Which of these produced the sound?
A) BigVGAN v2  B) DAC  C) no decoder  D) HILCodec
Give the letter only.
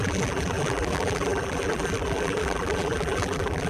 A